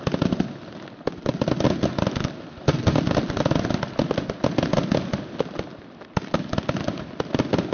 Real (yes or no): yes